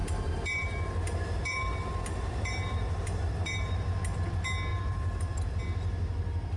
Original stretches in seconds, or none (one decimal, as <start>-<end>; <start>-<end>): 4.0-4.7; 5.6-6.6